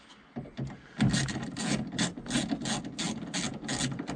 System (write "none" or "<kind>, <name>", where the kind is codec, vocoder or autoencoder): none